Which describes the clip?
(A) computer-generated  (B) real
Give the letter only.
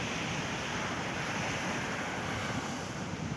B